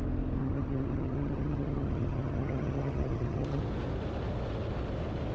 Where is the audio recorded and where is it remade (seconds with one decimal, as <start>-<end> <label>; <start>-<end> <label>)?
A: 0.0-0.4 recorded; 0.4-3.6 remade; 3.6-5.3 recorded